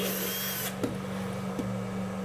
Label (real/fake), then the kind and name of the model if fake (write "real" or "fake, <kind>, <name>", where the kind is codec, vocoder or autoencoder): real